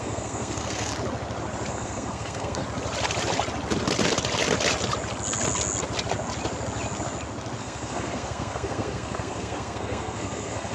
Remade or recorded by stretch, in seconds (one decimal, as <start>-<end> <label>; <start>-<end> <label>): 0.0-0.9 remade; 0.9-1.7 recorded; 1.7-2.6 remade; 2.6-7.6 recorded; 7.6-10.7 remade

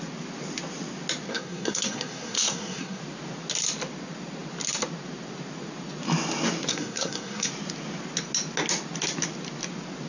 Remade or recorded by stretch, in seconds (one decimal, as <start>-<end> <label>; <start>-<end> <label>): 0.0-1.3 recorded; 1.3-3.0 remade; 3.0-6.7 recorded; 6.7-7.5 remade; 7.5-10.1 recorded

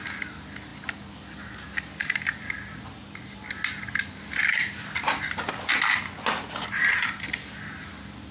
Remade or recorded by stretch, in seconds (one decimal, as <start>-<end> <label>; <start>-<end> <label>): 0.0-8.3 recorded

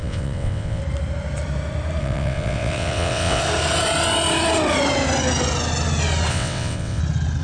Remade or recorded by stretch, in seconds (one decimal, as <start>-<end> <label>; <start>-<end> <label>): 0.0-0.8 remade; 0.8-2.0 recorded; 2.0-3.4 remade; 3.4-6.3 recorded; 6.3-7.0 remade; 7.0-7.4 recorded